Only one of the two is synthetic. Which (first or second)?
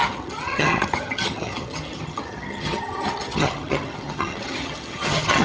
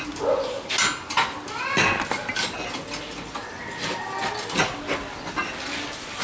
first